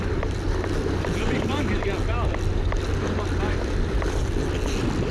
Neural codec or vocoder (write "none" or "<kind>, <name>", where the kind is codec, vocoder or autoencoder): none